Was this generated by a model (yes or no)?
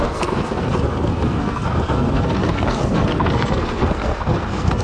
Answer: yes